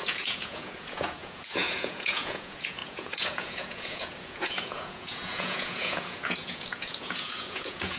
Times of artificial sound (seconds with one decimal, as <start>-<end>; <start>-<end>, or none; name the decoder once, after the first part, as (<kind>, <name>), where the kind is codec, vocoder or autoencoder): 0.0-8.0 (vocoder, Vocos)